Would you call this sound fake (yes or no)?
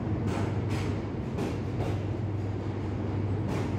no